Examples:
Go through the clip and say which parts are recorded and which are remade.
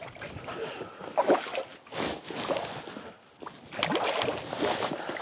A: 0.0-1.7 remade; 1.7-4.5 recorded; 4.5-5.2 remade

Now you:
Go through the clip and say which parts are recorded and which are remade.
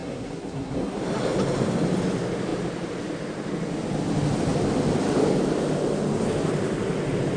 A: 0.0-1.0 remade; 1.0-7.4 recorded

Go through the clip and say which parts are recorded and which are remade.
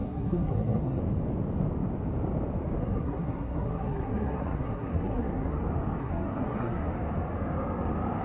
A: 0.0-1.0 remade; 1.0-2.8 recorded; 2.8-5.6 remade; 5.6-6.0 recorded; 6.0-6.9 remade; 6.9-8.2 recorded